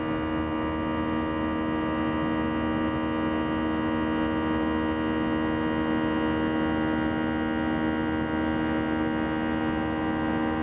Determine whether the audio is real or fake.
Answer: real